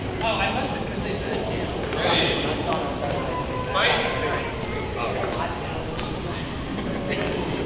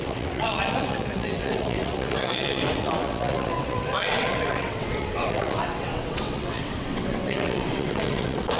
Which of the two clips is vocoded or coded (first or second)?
second